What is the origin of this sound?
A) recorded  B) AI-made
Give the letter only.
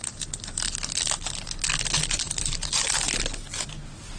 A